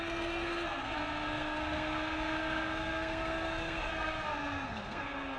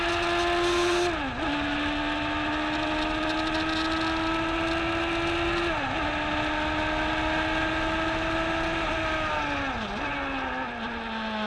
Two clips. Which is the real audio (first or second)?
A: second